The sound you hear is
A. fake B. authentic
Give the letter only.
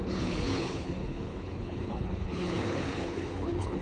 A